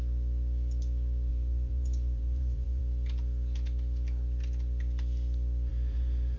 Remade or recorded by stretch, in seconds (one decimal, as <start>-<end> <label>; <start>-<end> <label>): 0.0-1.3 recorded; 1.3-2.8 remade; 2.8-5.7 recorded; 5.7-6.4 remade